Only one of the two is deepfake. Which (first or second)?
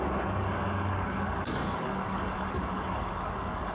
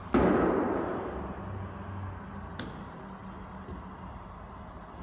first